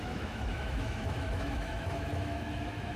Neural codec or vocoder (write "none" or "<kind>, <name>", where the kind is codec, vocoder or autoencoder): autoencoder, DAC-VAE